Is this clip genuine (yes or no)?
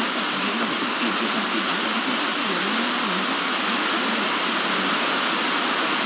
yes